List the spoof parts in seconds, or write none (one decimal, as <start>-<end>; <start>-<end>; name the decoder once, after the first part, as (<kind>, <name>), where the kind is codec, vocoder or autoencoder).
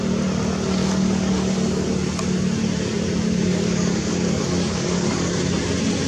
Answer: 0.8-1.9 (codec, DAC); 3.5-5.3